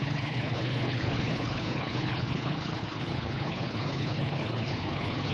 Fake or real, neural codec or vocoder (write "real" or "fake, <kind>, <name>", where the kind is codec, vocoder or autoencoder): fake, codec, HILCodec